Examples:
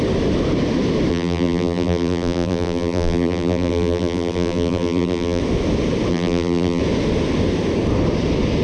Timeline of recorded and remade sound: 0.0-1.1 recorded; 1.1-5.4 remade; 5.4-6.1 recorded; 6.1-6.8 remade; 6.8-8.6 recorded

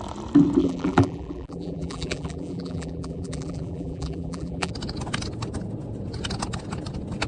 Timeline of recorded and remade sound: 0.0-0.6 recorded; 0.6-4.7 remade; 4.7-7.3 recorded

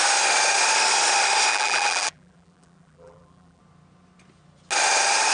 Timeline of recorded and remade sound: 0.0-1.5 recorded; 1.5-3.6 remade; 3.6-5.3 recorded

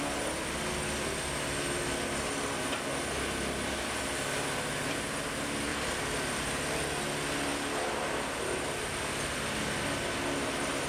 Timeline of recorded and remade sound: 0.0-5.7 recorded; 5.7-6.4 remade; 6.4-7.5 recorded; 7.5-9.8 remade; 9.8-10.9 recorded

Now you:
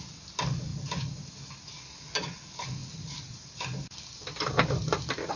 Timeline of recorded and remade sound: 0.0-0.7 recorded; 0.7-1.6 remade; 1.6-2.8 recorded; 2.8-5.4 remade

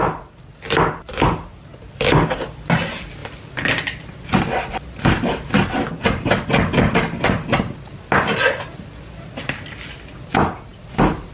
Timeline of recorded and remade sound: 0.0-1.2 remade; 1.2-11.3 recorded